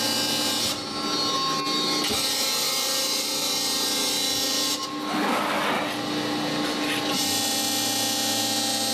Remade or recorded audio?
recorded